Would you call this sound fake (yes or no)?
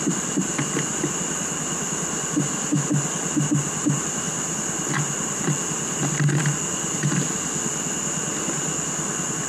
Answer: no